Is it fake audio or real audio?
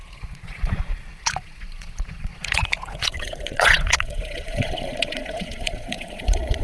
fake